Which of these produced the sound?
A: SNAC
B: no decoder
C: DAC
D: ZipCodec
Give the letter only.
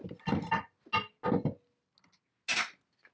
B